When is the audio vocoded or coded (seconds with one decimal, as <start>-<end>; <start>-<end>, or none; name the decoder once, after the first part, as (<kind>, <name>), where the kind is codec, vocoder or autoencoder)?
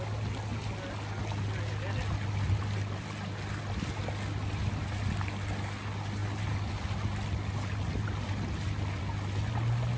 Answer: none